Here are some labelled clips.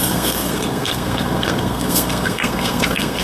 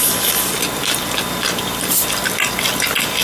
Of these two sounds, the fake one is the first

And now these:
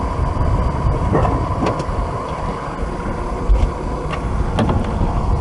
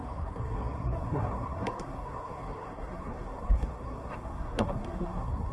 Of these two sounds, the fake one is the second